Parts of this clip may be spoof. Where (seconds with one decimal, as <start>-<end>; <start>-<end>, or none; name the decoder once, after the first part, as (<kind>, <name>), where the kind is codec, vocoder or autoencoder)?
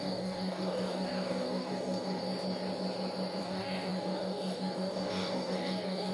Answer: 0.0-2.2 (codec, DAC); 3.4-6.1